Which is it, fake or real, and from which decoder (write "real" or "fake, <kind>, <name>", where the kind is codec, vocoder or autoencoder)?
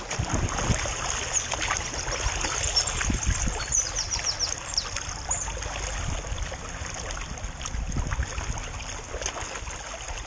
real